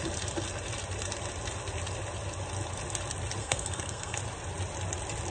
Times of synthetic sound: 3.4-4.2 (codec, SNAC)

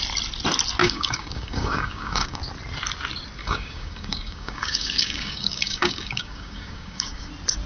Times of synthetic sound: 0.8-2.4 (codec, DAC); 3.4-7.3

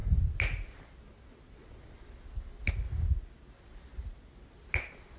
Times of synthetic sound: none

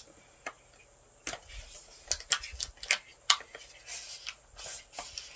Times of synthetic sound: none

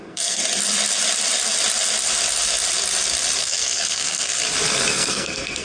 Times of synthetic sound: 0.0-0.4 (codec, SNAC); 3.4-4.3; 4.9-5.6

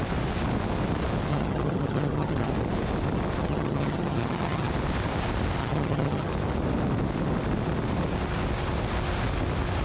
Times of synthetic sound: 1.3-2.5 (vocoder, HiFi-GAN); 3.4-4.7; 5.6-6.3

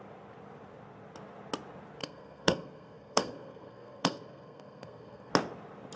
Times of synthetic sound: 2.0-5.3 (codec, SNAC)